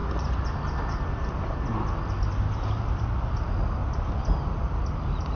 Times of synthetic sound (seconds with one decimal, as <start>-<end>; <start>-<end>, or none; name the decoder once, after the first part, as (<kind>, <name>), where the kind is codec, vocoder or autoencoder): none